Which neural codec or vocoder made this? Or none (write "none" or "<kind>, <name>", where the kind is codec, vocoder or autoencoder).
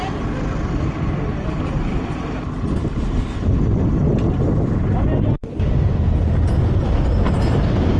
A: none